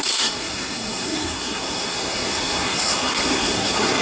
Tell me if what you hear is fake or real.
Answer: fake